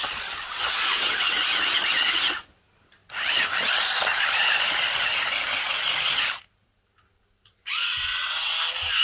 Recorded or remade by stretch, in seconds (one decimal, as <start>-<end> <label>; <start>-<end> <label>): 0.0-7.6 recorded; 7.6-8.5 remade; 8.5-9.0 recorded